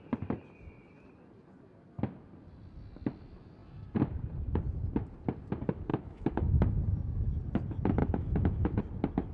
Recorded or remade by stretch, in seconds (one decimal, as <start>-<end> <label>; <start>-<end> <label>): 0.0-5.9 recorded; 5.9-6.7 remade; 6.7-8.0 recorded; 8.0-8.8 remade; 8.8-9.3 recorded